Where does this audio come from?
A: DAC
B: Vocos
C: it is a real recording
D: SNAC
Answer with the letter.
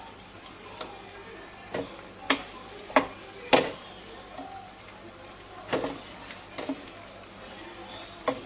C